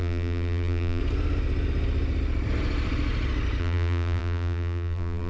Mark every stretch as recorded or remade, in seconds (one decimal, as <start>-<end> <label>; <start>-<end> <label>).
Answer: 0.0-1.0 remade; 1.0-3.6 recorded; 3.6-5.3 remade